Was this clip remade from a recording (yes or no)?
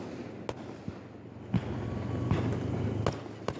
no